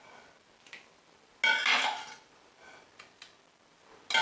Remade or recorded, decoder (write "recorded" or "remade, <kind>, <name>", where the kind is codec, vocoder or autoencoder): recorded